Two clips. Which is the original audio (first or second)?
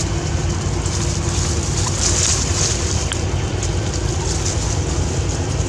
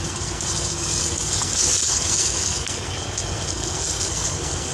first